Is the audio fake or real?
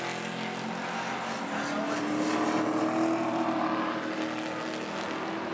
real